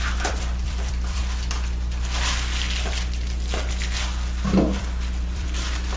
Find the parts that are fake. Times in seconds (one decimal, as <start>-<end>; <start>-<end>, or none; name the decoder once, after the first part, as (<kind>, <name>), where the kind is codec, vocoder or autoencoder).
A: 0.0-1.2 (vocoder, BigVGAN v2); 4.8-6.0